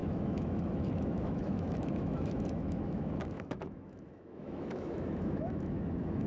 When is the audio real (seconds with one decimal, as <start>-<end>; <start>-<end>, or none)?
none